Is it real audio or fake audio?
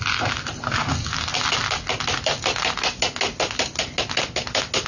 real